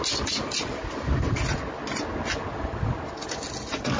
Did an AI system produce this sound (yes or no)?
no